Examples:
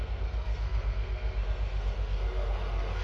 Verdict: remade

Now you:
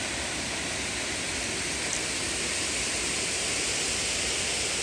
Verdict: recorded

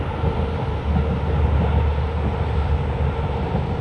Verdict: recorded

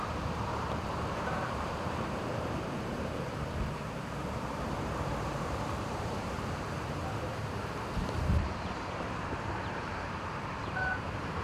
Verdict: remade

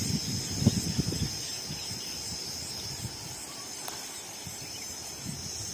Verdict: recorded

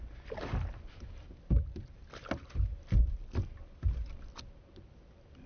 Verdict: recorded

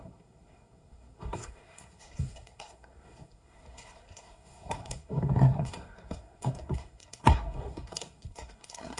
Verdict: remade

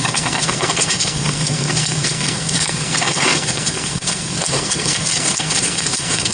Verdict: remade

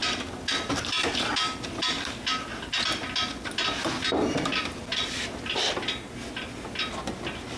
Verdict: recorded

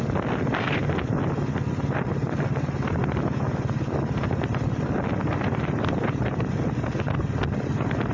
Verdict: recorded